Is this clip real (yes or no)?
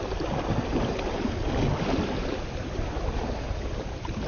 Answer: yes